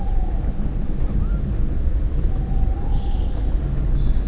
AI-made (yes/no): no